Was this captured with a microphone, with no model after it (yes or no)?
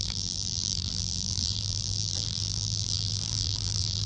no